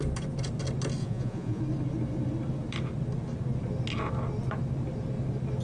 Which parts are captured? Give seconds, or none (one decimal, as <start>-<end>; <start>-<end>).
0.0-1.0; 1.6-5.6

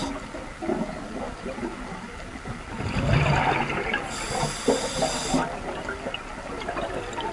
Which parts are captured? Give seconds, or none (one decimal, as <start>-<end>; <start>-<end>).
0.0-7.3